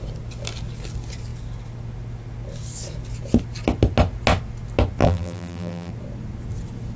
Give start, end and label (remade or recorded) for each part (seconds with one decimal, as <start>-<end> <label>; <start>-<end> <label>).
0.0-5.0 recorded; 5.0-5.9 remade; 5.9-7.0 recorded